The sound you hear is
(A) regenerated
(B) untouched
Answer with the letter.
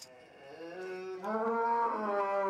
B